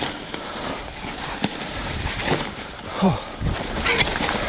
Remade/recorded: remade